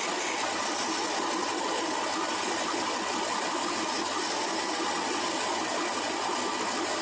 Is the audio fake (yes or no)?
no